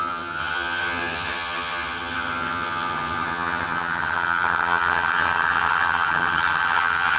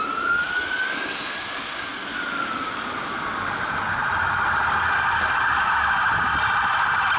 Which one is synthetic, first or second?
first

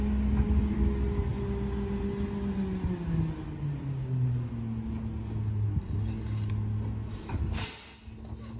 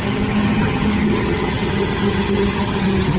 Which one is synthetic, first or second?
second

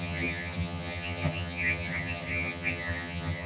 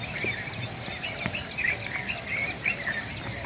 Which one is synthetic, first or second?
first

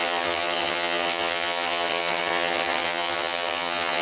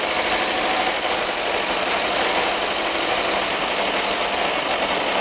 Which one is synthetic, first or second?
first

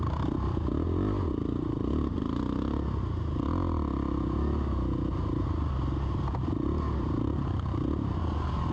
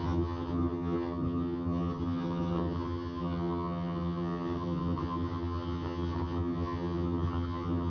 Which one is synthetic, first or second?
second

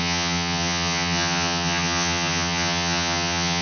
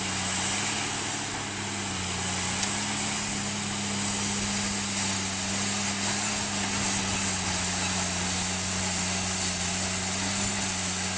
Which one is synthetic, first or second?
first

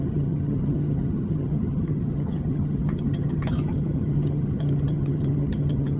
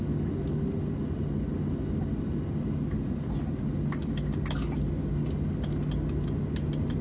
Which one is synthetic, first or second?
first